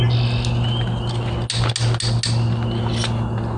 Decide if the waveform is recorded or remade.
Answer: recorded